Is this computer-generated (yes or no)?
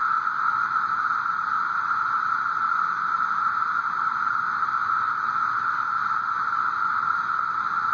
no